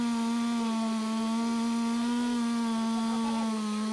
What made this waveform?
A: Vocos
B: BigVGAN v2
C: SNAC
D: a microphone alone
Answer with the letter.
D